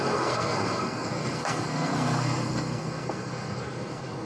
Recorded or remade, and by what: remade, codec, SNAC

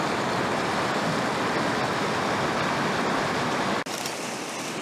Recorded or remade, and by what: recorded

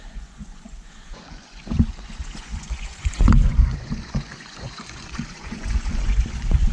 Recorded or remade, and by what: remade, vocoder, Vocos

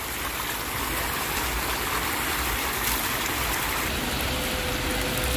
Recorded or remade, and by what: recorded